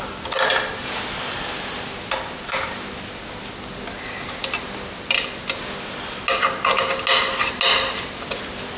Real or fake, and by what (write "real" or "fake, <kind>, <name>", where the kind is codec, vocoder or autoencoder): real